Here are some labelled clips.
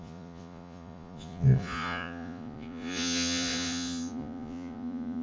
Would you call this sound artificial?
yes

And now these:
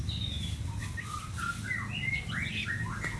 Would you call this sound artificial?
no